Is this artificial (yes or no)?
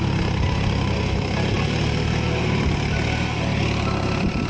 no